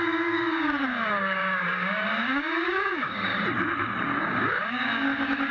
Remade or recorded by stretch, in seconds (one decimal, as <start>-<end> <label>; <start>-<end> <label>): 0.0-3.3 remade; 3.3-4.2 recorded; 4.2-5.5 remade